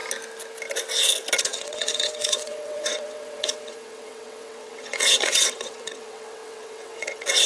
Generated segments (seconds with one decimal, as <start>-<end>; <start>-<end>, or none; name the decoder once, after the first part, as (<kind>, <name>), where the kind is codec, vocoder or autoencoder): 1.4-7.5 (vocoder, WaveNeXt)